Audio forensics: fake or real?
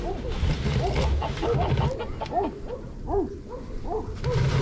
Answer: real